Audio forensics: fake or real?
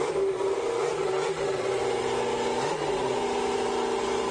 real